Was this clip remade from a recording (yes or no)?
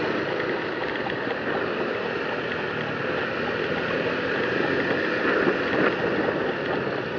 no